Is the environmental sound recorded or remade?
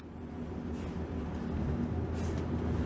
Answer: recorded